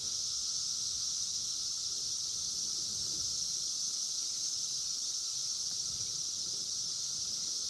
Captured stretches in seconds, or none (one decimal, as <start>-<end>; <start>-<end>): 1.6-7.7